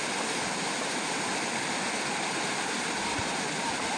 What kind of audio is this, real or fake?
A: real